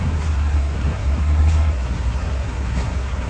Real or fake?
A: fake